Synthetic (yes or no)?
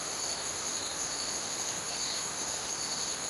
yes